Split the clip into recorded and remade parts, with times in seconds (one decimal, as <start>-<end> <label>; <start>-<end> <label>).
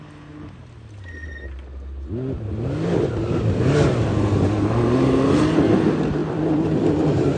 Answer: 0.0-6.2 recorded; 6.2-7.4 remade